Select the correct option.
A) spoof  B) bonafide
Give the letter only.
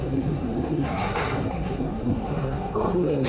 A